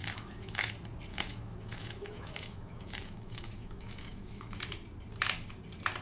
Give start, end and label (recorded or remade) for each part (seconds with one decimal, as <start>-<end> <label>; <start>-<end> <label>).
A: 0.0-0.7 remade; 0.7-1.1 recorded; 1.1-4.6 remade; 4.6-6.0 recorded